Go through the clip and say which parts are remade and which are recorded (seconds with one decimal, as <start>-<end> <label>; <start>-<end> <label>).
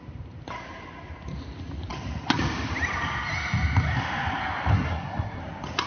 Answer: 0.0-4.7 recorded; 4.7-5.4 remade; 5.4-5.9 recorded